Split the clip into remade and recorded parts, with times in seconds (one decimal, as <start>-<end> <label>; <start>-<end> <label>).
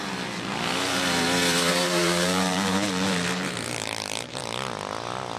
0.0-1.7 recorded; 1.7-4.4 remade; 4.4-5.4 recorded